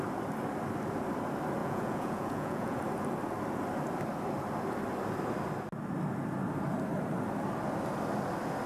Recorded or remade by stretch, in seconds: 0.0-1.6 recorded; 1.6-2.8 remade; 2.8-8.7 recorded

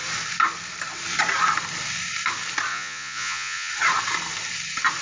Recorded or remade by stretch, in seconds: 0.0-2.7 recorded; 2.7-3.7 remade; 3.7-5.0 recorded